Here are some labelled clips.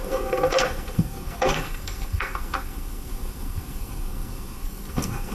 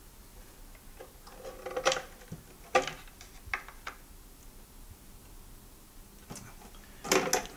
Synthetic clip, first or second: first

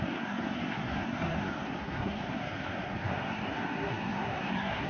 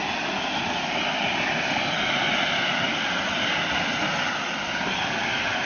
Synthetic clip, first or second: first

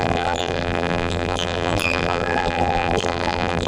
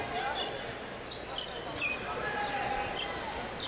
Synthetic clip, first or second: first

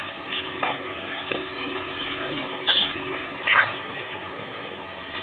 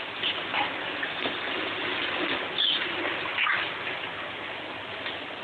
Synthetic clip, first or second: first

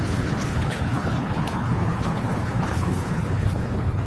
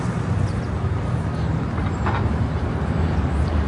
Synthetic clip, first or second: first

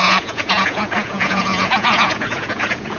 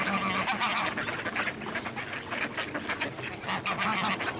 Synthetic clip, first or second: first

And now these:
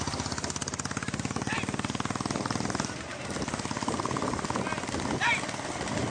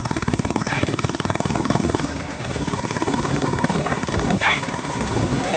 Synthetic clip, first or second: second